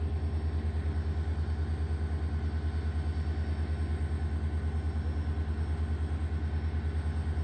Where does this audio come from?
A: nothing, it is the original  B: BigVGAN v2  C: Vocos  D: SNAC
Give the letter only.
A